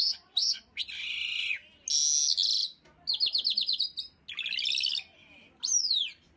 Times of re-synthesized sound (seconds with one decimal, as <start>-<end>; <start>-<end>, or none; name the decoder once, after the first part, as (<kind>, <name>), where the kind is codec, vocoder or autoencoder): 0.0-1.6 (vocoder, BigVGAN v2); 5.4-6.4